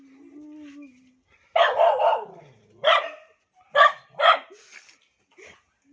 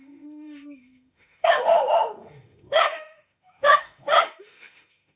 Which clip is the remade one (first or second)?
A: second